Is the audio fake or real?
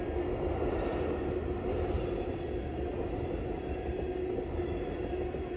real